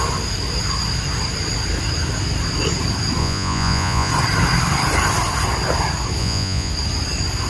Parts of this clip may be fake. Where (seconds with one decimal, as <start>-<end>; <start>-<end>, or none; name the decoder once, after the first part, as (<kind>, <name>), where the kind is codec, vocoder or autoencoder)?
3.2-4.1 (vocoder, Vocos); 6.2-6.7